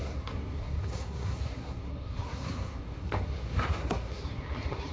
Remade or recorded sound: remade